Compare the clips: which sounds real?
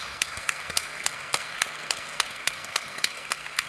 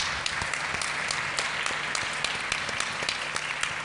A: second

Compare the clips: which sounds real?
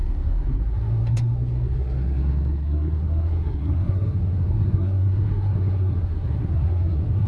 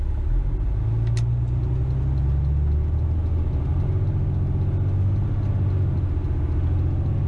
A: second